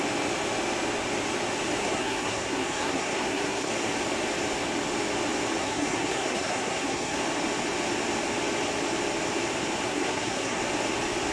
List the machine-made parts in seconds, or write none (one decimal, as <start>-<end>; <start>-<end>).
1.8-3.7; 5.6-7.2; 9.9-10.6

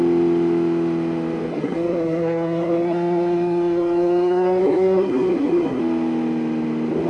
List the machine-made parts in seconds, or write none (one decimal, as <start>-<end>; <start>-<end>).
1.5-5.8

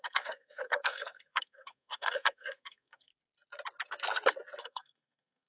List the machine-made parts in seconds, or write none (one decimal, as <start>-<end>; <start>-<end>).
0.0-3.1; 4.6-5.5

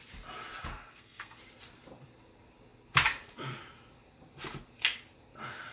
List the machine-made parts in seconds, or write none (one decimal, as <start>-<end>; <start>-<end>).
0.7-1.4

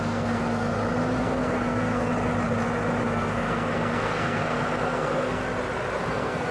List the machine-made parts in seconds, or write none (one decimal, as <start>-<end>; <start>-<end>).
0.0-0.7; 1.2-2.1; 3.0-5.4; 6.1-6.5

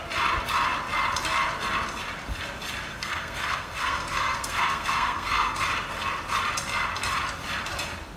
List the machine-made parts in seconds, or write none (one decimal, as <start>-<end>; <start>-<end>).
2.9-5.6

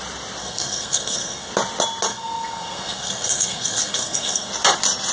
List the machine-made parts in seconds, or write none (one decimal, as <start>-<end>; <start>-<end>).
0.4-1.5; 2.1-4.5

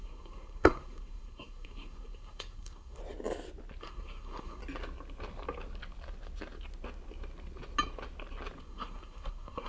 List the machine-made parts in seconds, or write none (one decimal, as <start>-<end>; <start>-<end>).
0.0-3.0; 3.8-4.6; 8.6-9.7